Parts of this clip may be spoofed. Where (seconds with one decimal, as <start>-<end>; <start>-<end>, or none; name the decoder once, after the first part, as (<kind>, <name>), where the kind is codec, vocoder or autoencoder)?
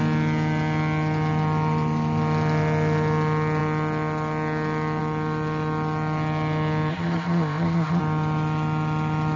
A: 6.9-8.0 (codec, ZipCodec)